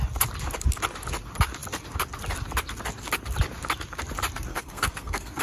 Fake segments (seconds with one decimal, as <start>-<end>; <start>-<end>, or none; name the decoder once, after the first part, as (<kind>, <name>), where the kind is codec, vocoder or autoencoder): 4.5-5.4 (codec, SNAC)